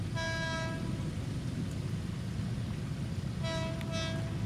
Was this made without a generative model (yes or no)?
yes